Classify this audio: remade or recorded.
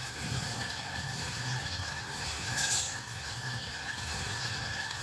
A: remade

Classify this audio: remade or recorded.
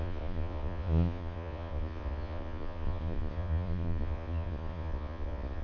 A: remade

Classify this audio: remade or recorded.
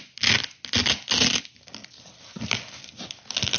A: recorded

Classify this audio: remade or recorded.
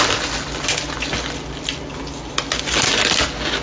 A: recorded